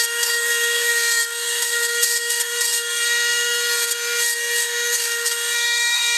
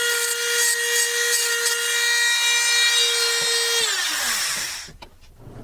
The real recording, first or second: second